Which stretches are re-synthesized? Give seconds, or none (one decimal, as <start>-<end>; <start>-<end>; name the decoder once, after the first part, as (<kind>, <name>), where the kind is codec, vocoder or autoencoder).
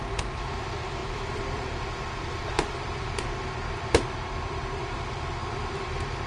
0.0-6.3 (vocoder, BigVGAN v2)